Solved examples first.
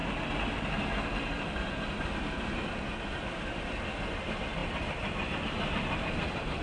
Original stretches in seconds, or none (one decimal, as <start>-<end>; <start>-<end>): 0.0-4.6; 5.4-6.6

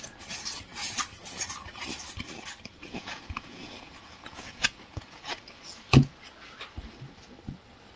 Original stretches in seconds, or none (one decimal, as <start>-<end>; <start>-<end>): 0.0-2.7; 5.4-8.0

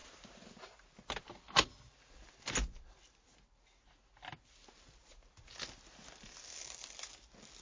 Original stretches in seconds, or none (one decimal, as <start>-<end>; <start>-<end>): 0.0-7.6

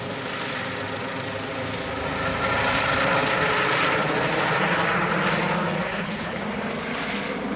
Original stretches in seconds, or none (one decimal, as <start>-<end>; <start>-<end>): 0.0-5.9; 6.4-7.6

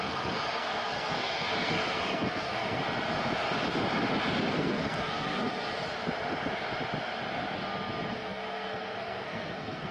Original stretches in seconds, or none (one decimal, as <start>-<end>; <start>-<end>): 2.8-4.5; 5.7-8.1